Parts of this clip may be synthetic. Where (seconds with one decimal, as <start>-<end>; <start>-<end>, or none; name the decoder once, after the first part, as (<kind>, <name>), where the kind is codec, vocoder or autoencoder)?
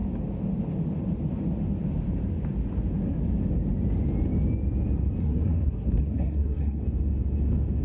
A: 5.2-6.8 (codec, SNAC)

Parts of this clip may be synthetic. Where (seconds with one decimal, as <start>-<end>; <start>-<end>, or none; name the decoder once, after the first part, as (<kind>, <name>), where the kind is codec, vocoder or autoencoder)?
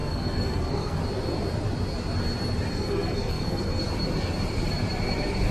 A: 0.0-1.0 (codec, SNAC); 2.7-3.8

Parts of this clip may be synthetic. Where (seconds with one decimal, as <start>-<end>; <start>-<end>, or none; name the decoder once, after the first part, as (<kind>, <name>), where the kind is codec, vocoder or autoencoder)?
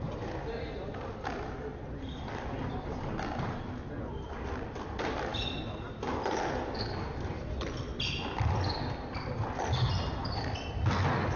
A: none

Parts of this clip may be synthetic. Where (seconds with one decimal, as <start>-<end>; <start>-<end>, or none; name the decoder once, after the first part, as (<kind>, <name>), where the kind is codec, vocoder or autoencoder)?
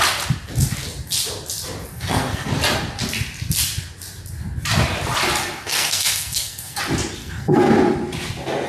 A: 1.9-2.5 (codec, SNAC); 5.4-6.8; 7.2-7.7